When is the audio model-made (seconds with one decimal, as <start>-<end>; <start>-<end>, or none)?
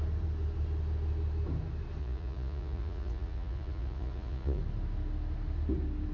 2.0-4.6